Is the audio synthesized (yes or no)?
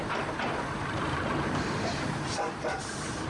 yes